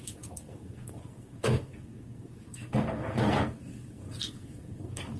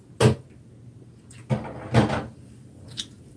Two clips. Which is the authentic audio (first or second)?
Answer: second